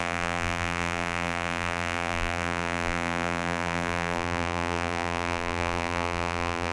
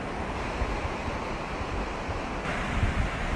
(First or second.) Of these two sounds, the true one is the second